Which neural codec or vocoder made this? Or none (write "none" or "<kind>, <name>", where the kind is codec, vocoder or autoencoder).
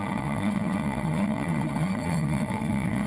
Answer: vocoder, WaveNeXt